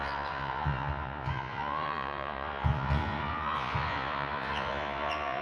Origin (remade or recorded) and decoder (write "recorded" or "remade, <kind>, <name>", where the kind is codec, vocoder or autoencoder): remade, vocoder, Vocos